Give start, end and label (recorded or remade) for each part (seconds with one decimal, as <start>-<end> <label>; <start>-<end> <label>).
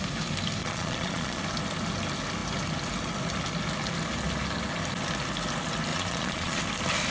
0.0-0.6 recorded; 0.6-1.4 remade; 1.4-5.9 recorded; 5.9-6.6 remade; 6.6-7.1 recorded